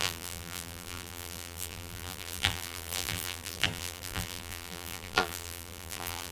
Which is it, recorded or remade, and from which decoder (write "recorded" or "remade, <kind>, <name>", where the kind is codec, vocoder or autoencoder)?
remade, vocoder, BigVGAN v2